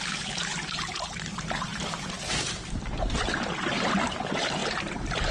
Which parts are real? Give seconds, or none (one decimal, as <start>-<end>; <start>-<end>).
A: 4.6-5.3